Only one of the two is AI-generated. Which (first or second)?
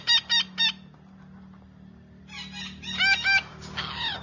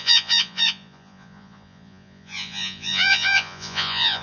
second